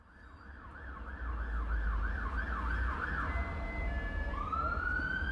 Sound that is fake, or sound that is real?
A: real